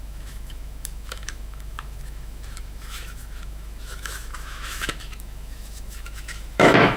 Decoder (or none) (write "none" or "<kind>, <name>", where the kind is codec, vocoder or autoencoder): autoencoder, DAC-VAE